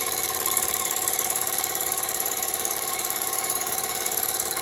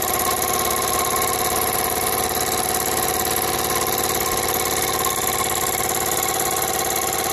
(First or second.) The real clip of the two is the second